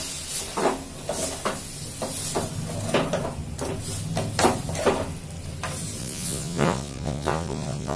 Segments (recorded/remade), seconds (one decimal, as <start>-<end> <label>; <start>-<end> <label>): 0.0-6.0 recorded; 6.0-8.0 remade

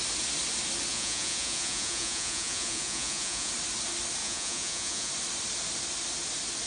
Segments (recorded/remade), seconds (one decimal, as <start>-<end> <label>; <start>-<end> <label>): 0.0-0.9 recorded; 0.9-3.5 remade; 3.5-4.2 recorded; 4.2-5.1 remade; 5.1-6.7 recorded

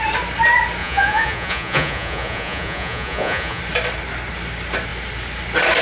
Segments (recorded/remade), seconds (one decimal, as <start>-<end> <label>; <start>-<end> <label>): 0.0-0.8 recorded; 0.8-3.6 remade; 3.6-5.8 recorded

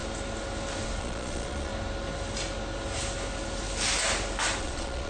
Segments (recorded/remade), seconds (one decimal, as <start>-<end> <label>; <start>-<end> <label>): 0.0-1.0 recorded; 1.0-1.7 remade; 1.7-4.6 recorded; 4.6-5.1 remade

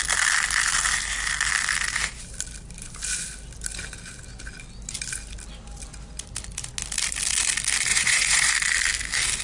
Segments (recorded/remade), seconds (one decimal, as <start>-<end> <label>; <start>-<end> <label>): 0.0-7.9 recorded; 7.9-8.5 remade; 8.5-9.4 recorded